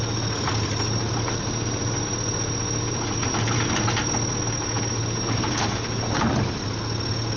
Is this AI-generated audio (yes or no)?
no